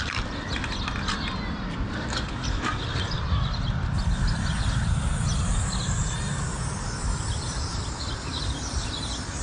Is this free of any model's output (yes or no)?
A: yes